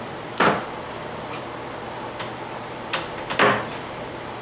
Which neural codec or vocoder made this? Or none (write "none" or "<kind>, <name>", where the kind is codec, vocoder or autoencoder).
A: vocoder, BigVGAN v2